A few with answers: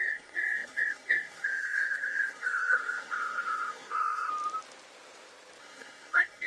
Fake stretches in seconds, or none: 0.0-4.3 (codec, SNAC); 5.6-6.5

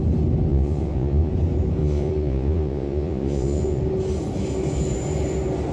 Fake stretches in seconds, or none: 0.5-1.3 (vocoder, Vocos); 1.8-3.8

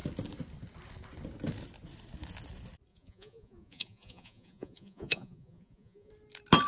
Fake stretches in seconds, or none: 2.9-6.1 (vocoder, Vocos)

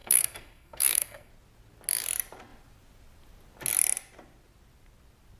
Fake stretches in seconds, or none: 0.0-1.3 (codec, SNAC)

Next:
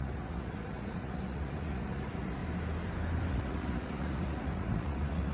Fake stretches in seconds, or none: 0.0-2.4 (vocoder, Vocos); 3.3-5.3

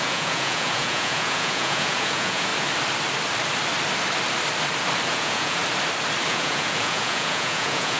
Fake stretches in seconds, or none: 0.0-2.5 (vocoder, Vocos); 5.1-5.6; 6.3-8.0

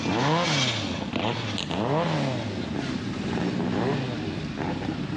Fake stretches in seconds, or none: 1.1-1.6 (vocoder, BigVGAN v2); 4.7-5.2